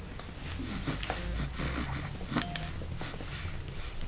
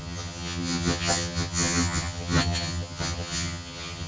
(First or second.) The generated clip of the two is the second